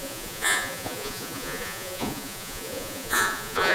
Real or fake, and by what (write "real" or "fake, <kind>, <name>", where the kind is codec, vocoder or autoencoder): fake, vocoder, Vocos